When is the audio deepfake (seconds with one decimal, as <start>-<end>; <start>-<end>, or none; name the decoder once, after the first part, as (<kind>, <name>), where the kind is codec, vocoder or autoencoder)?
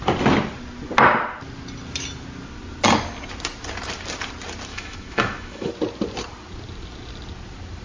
4.7-5.7 (autoencoder, DAC-VAE)